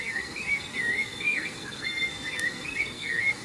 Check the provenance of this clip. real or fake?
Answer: fake